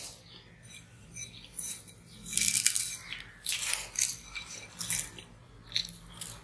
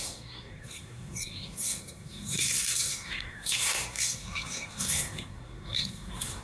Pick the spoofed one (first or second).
second